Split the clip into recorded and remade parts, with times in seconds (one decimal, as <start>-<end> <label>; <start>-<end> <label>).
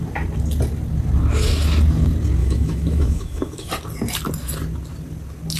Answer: 0.0-2.4 recorded; 2.4-3.7 remade; 3.7-5.6 recorded